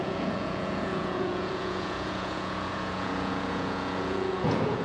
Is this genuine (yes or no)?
no